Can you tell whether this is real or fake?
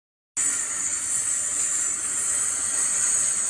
real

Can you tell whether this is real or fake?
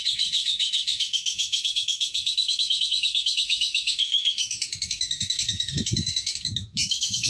fake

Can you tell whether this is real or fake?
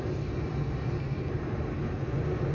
real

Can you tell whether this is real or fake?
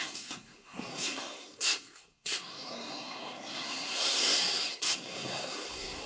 fake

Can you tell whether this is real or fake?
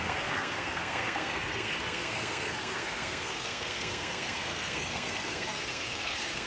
fake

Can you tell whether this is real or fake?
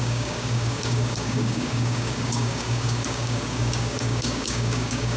fake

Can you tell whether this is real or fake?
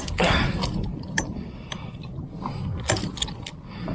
real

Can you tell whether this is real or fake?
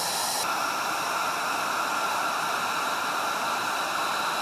real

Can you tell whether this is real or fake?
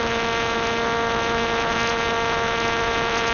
real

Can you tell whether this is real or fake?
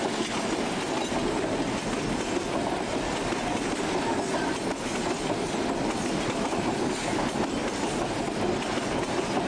real